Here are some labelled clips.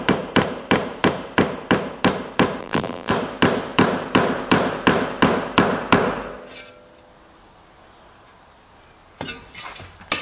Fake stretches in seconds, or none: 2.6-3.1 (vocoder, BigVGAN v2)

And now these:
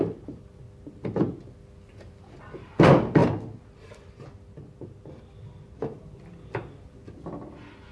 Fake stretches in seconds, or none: none

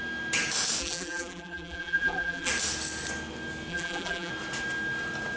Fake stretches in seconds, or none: 0.8-2.5 (vocoder, BigVGAN v2); 3.7-4.3